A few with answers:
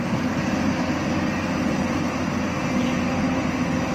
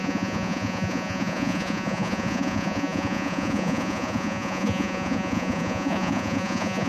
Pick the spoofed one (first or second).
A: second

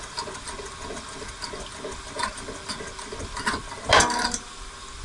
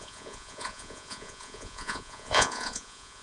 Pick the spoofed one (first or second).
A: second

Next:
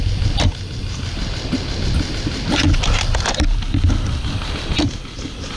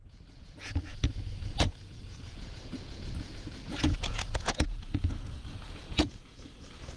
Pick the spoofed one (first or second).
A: second